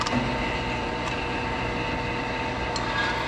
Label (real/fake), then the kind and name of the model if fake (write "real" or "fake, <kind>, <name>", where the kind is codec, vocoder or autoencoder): real